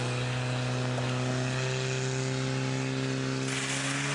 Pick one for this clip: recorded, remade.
recorded